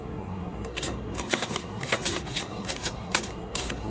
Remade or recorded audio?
remade